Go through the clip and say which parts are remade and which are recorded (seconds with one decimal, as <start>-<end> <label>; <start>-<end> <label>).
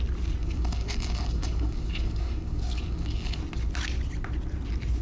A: 0.0-0.4 recorded; 0.4-3.4 remade; 3.4-5.0 recorded